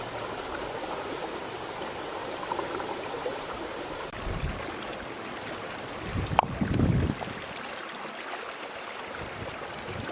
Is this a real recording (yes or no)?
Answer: no